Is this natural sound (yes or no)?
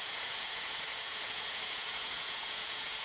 no